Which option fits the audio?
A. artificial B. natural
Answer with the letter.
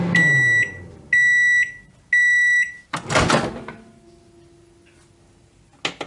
B